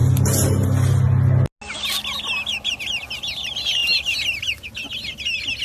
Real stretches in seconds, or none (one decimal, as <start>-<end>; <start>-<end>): 0.0-3.4; 3.8-5.6